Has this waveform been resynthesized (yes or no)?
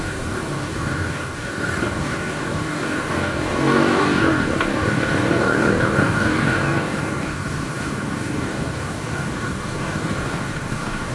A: yes